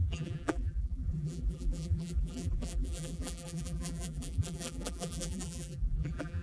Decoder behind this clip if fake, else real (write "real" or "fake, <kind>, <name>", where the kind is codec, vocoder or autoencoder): fake, vocoder, BigVGAN v2